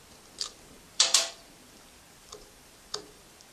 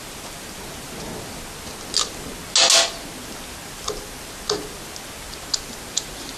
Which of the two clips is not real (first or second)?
first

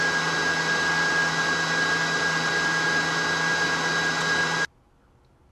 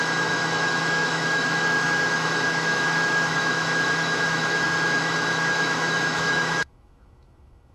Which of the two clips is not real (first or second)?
second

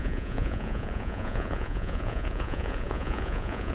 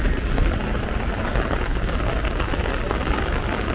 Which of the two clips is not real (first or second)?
first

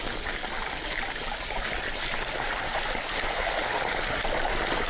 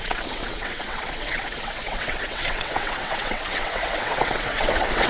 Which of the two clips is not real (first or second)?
second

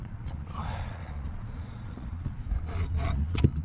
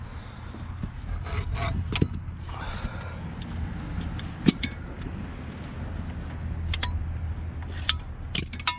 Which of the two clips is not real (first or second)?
first